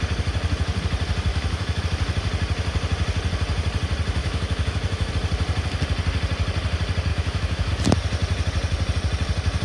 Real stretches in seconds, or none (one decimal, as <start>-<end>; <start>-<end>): 0.0-1.3; 1.8-4.2; 5.1-7.1; 7.7-9.6